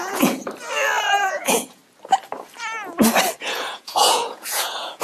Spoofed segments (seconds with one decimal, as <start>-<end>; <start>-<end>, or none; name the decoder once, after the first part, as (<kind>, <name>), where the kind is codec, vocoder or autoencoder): 0.0-0.4 (vocoder, Vocos); 1.2-1.8; 3.4-5.0

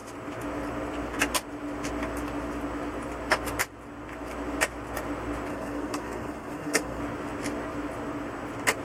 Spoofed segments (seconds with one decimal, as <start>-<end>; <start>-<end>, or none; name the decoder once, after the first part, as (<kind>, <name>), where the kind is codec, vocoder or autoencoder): 5.5-7.0 (codec, SNAC)

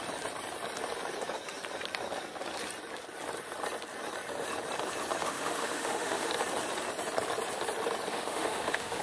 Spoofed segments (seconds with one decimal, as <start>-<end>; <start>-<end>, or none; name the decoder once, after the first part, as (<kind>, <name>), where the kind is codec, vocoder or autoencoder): 5.2-6.3 (autoencoder, DAC-VAE); 8.1-9.0

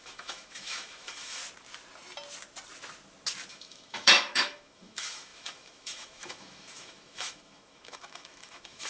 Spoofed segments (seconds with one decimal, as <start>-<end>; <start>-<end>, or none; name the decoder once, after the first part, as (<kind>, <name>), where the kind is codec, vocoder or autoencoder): 0.0-1.4 (autoencoder, DAC-VAE); 3.5-8.9

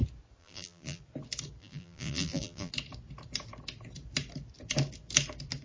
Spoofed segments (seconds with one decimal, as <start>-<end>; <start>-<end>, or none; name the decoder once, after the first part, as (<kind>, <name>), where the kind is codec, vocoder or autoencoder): 0.4-1.0 (vocoder, BigVGAN v2); 1.6-2.7

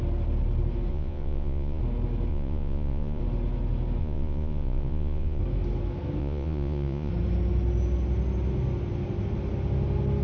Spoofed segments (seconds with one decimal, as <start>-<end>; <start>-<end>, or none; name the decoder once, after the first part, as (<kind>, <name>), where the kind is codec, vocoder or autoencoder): 0.9-1.8 (vocoder, Vocos); 2.3-3.2; 4.0-5.4; 6.2-7.1